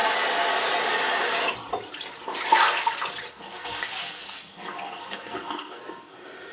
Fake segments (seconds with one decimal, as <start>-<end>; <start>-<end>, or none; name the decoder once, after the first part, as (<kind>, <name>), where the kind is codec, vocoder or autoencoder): 3.3-6.5 (codec, SNAC)